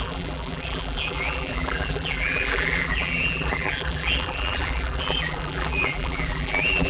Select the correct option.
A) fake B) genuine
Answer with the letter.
A